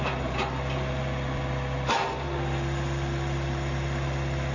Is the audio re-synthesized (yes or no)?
no